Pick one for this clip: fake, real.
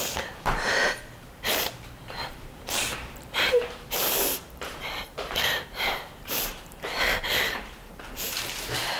fake